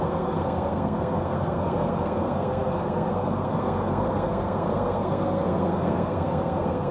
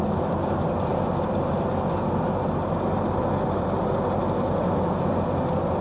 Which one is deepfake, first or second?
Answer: first